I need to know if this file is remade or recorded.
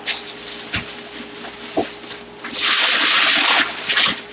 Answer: recorded